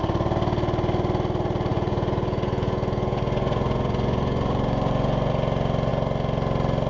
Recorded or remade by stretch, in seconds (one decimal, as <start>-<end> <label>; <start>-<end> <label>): 0.0-1.7 recorded; 1.7-5.3 remade; 5.3-6.9 recorded